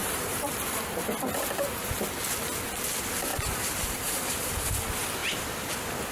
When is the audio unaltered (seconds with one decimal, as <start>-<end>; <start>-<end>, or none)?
0.5-3.3; 4.5-6.1